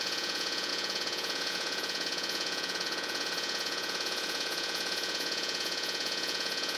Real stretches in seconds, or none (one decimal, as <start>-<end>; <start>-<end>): none